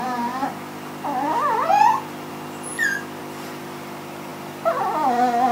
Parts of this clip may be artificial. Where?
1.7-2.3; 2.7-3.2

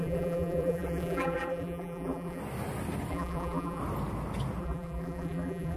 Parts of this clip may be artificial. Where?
0.0-2.4; 3.1-3.8; 4.6-5.8

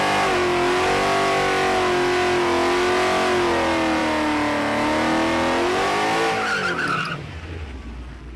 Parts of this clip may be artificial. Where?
none